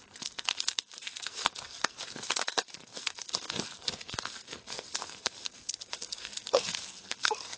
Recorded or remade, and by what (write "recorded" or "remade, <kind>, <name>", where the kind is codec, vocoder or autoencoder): remade, codec, SNAC